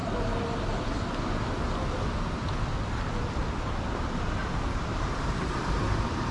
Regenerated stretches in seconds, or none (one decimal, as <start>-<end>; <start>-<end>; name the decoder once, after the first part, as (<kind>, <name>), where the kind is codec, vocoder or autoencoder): 4.4-6.3 (vocoder, BigVGAN v2)